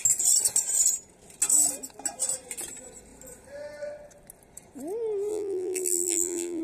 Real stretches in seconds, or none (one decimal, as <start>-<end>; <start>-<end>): 0.0-5.3